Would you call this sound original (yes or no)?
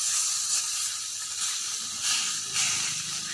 yes